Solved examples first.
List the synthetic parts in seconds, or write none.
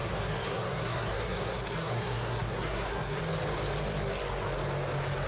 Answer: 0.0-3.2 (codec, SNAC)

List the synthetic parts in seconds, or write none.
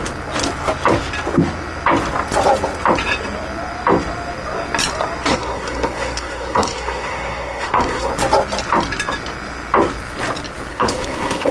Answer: 5.3-8.1 (codec, SNAC); 10.7-11.5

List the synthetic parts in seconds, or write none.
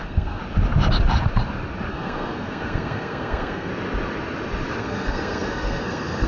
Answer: 0.0-0.4 (codec, SNAC); 1.9-3.7; 4.8-6.3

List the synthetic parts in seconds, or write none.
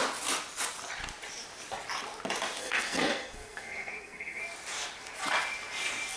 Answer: 2.6-4.4 (codec, SNAC)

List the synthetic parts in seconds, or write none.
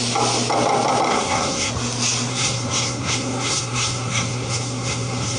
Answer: 1.1-1.7 (codec, SNAC); 2.3-5.4